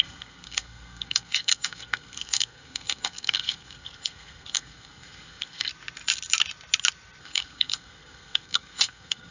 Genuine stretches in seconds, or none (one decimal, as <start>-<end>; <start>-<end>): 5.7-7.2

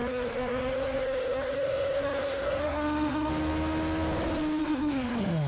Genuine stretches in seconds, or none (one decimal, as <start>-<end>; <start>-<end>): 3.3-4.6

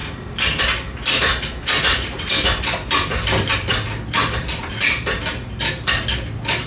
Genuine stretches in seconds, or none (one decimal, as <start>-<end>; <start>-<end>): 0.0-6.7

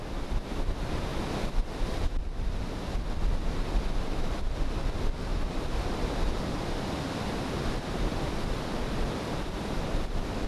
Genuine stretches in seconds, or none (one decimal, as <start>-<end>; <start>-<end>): 0.0-5.3; 8.9-10.5

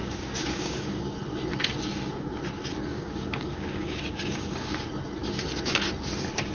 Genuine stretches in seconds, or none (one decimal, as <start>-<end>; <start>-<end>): 1.1-2.9; 4.7-6.5